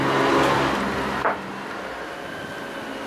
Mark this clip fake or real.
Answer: real